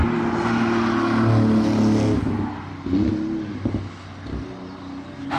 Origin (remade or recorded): recorded